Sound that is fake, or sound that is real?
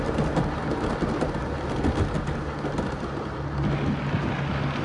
real